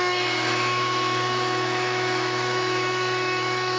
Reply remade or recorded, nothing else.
remade